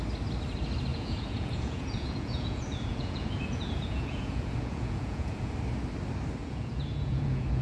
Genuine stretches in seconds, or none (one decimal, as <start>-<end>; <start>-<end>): 0.0-0.9; 5.5-6.4